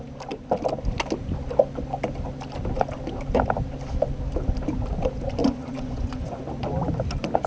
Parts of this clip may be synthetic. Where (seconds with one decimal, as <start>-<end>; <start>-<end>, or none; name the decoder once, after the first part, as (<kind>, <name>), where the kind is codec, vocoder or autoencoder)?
5.4-6.4 (vocoder, Vocos)